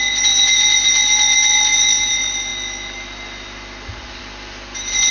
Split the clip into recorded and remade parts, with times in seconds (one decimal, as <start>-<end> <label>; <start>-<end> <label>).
0.0-5.1 recorded